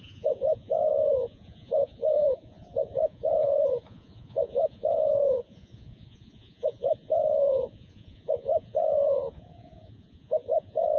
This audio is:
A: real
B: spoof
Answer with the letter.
B